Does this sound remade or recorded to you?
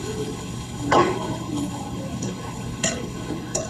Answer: remade